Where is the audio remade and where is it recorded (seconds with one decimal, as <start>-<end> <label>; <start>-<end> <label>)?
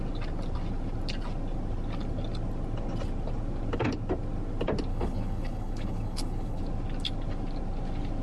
0.0-4.9 recorded; 4.9-6.6 remade; 6.6-8.2 recorded